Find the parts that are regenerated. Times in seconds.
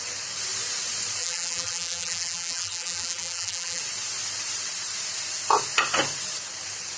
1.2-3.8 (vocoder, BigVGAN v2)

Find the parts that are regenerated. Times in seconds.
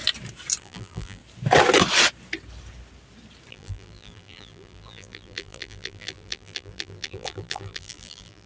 0.6-1.2 (vocoder, BigVGAN v2); 3.5-8.5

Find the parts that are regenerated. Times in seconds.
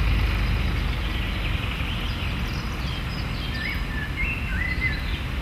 4.5-5.0 (vocoder, BigVGAN v2)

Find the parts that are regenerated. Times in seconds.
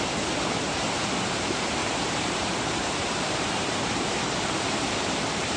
1.8-5.6 (vocoder, BigVGAN v2)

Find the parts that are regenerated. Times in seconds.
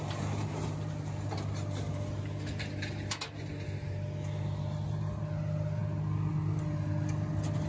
none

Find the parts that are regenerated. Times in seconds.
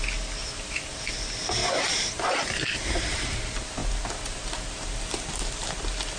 0.4-1.0 (vocoder, BigVGAN v2); 1.6-3.4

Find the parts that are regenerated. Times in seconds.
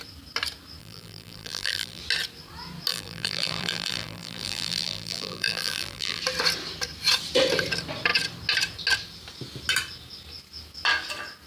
0.8-2.0 (vocoder, BigVGAN v2); 2.9-6.2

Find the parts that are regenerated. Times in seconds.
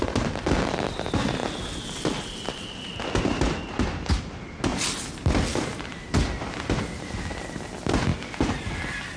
4.7-5.3 (vocoder, BigVGAN v2)